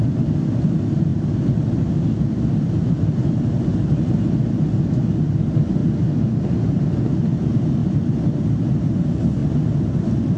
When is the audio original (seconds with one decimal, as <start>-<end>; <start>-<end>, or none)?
0.0-10.4